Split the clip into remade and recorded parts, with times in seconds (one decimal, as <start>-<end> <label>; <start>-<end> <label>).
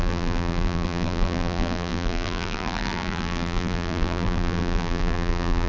0.0-5.7 remade